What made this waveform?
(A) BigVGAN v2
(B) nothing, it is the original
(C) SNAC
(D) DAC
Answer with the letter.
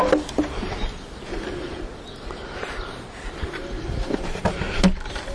B